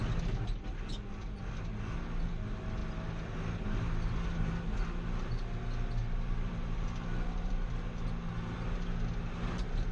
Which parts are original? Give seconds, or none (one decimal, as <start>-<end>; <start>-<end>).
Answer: 0.0-6.0; 8.3-9.9